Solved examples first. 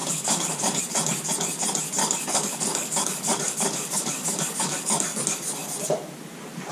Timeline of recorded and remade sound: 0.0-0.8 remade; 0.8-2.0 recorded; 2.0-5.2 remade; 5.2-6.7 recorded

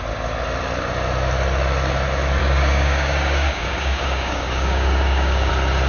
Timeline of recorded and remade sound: 0.0-2.4 recorded; 2.4-5.5 remade; 5.5-5.9 recorded